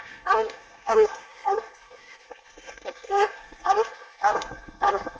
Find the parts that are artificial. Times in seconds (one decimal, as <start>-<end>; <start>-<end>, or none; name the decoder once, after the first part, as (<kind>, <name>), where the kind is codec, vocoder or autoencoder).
0.0-5.2 (codec, SNAC)